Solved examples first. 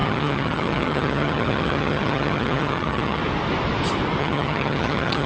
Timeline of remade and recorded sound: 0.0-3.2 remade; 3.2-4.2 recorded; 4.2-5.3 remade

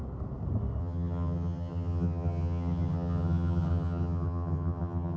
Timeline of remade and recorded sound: 0.0-0.8 recorded; 0.8-5.2 remade

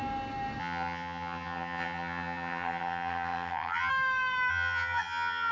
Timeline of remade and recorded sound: 0.0-0.6 recorded; 0.6-3.9 remade; 3.9-4.5 recorded; 4.5-5.5 remade

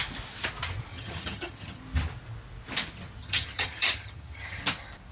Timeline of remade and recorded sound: 0.0-0.9 recorded; 0.9-1.8 remade; 1.8-3.2 recorded; 3.2-4.6 remade; 4.6-5.1 recorded

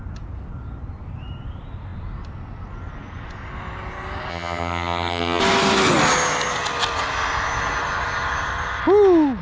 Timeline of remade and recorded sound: 0.0-4.3 recorded; 4.3-5.4 remade; 5.4-9.4 recorded